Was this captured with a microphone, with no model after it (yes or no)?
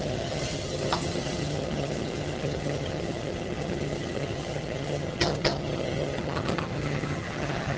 no